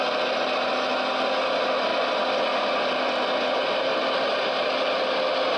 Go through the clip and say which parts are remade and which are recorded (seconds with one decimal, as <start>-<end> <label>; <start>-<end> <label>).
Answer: 0.0-5.6 recorded